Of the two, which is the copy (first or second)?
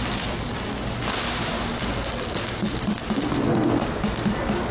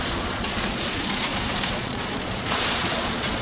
second